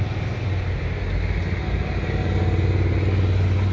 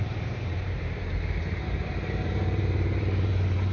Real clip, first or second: first